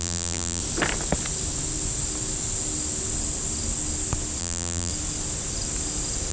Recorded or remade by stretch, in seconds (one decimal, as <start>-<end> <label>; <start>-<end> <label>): 0.0-0.6 remade; 0.6-4.4 recorded; 4.4-4.9 remade; 4.9-6.3 recorded